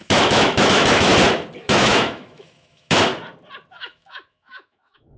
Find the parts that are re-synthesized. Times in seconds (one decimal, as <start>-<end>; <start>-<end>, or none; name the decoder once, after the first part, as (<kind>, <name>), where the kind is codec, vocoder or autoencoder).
0.0-1.1 (autoencoder, DAC-VAE); 1.6-3.1; 3.7-5.2